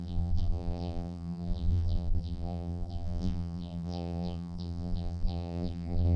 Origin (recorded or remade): remade